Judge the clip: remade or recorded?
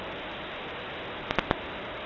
recorded